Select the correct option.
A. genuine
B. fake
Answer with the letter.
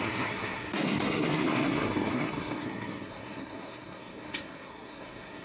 B